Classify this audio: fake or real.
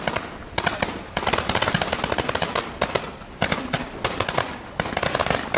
real